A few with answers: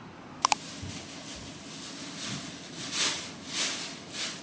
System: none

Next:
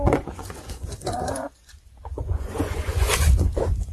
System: vocoder, Vocos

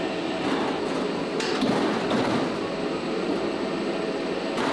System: none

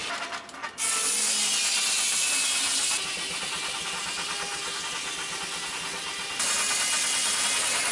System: none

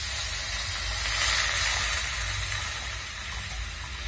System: none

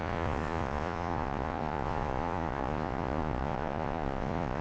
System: vocoder, Vocos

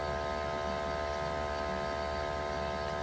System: none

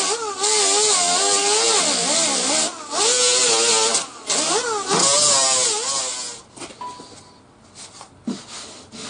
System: none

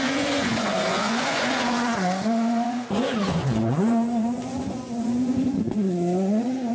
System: vocoder, Vocos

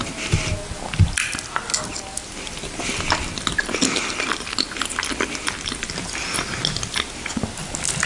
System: none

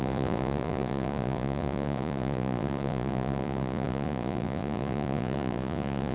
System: vocoder, Vocos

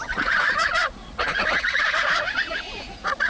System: vocoder, Vocos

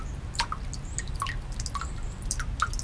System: none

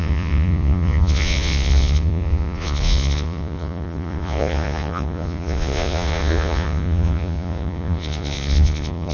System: vocoder, Vocos